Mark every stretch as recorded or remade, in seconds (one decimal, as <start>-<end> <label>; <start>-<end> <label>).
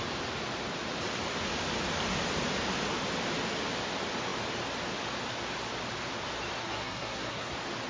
0.0-6.6 recorded; 6.6-7.5 remade; 7.5-7.9 recorded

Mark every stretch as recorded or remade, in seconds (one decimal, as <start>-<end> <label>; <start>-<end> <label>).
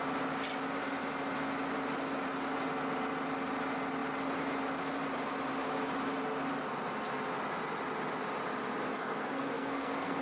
0.0-8.9 recorded; 8.9-10.2 remade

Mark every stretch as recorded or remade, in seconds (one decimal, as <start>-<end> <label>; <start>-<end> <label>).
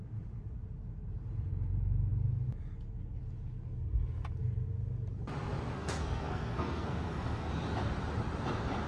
0.0-5.7 recorded; 5.7-7.5 remade; 7.5-8.9 recorded